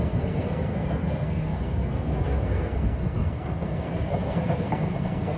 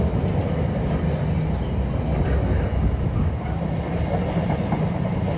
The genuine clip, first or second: second